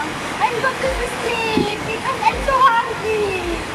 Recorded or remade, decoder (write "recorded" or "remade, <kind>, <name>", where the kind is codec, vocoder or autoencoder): remade, codec, DAC